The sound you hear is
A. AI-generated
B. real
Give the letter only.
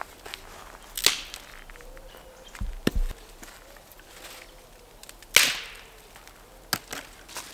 B